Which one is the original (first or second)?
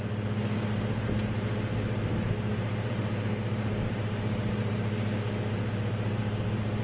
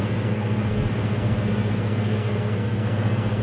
first